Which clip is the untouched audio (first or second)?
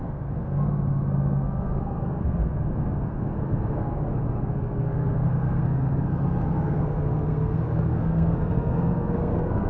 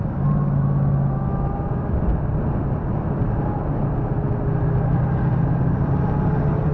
second